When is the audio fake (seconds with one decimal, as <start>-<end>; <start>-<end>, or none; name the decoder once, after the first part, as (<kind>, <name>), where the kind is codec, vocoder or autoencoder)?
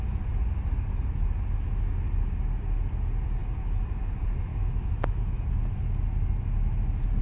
4.5-5.2 (autoencoder, DAC-VAE)